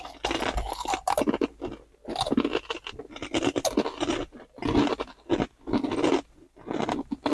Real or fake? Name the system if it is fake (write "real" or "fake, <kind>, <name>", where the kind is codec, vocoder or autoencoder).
real